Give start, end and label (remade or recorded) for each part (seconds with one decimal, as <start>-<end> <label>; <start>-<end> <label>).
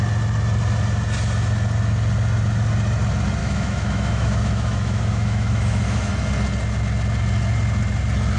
0.0-3.4 recorded; 3.4-6.1 remade; 6.1-8.4 recorded